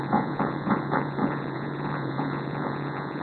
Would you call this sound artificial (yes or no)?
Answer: yes